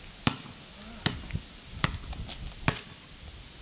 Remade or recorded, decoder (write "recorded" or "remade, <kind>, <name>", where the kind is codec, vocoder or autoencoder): recorded